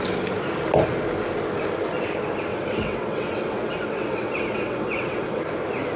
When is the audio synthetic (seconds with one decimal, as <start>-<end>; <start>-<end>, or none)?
2.5-5.4